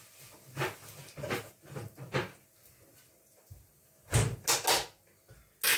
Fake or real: real